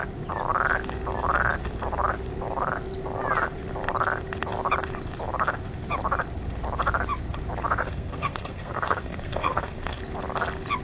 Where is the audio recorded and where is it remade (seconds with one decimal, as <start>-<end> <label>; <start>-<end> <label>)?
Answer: 0.0-7.8 recorded; 7.8-10.0 remade; 10.0-10.8 recorded